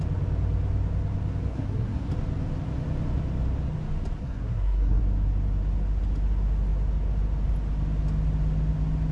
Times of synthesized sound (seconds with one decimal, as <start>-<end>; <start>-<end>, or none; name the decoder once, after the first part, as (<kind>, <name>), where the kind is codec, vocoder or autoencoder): 1.5-2.1 (codec, SNAC); 4.2-5.0